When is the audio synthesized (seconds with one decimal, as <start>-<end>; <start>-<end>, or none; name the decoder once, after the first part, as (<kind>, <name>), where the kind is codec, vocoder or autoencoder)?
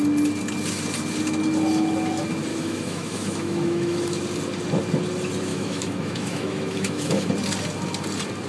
2.5-4.2 (autoencoder, DAC-VAE); 5.5-7.3